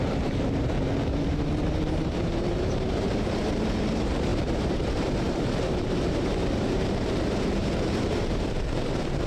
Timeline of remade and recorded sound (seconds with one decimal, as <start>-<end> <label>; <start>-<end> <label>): 0.0-9.3 remade